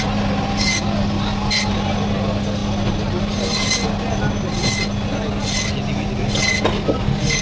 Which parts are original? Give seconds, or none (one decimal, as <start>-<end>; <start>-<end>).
0.0-7.4